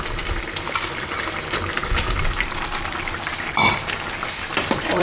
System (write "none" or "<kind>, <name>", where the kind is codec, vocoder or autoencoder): vocoder, BigVGAN v2